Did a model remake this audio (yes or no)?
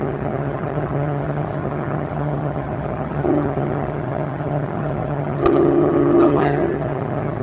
yes